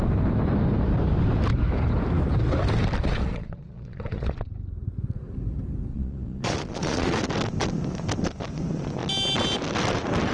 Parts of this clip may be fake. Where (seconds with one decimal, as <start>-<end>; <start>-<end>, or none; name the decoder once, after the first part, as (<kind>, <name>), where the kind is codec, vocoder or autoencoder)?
3.2-4.5 (vocoder, Vocos); 5.9-7.2